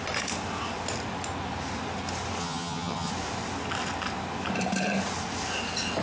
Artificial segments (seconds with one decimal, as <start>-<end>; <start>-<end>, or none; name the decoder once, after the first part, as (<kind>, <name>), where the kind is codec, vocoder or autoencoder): 2.4-3.1 (vocoder, HiFi-GAN)